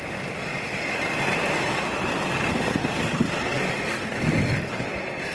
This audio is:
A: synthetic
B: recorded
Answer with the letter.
A